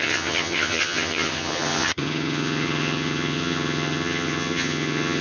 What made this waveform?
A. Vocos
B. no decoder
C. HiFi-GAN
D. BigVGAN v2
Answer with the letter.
C